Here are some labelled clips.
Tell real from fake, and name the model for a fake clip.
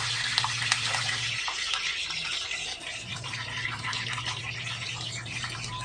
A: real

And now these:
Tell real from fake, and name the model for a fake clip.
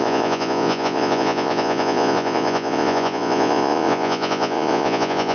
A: fake, vocoder, Vocos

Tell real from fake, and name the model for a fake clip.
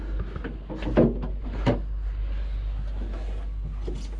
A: real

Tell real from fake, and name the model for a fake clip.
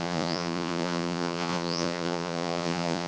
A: fake, vocoder, Vocos